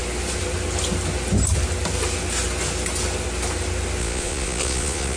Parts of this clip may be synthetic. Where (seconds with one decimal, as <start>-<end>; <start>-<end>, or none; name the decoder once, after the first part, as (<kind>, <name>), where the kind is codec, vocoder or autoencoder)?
4.0-5.2 (vocoder, Vocos)